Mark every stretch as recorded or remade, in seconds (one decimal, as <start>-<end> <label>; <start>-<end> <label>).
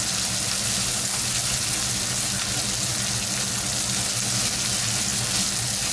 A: 0.0-5.9 recorded